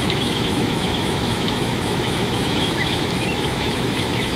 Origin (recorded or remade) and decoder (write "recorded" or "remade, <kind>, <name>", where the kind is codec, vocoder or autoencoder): remade, autoencoder, DAC-VAE